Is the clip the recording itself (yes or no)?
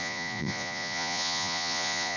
no